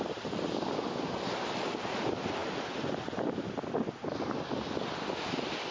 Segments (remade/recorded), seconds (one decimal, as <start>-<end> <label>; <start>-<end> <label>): 0.0-5.7 recorded